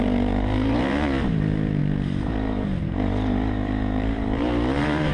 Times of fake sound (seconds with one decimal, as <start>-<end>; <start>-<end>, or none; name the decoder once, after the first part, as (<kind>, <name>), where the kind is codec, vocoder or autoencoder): 0.0-5.1 (vocoder, BigVGAN v2)